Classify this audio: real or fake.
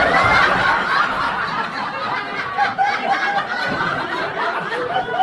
fake